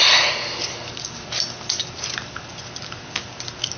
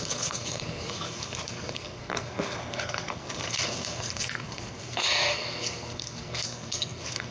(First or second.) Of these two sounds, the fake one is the second